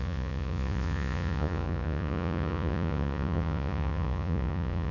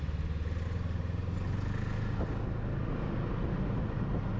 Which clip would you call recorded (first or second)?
second